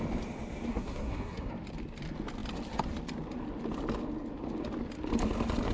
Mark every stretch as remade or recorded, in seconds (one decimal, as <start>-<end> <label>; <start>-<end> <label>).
0.0-0.7 recorded; 0.7-1.5 remade; 1.5-5.7 recorded